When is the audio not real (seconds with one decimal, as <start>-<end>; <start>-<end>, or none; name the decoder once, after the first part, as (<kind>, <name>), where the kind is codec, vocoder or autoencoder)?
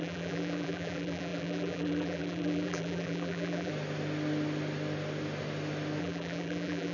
0.0-3.7 (vocoder, BigVGAN v2); 6.0-6.9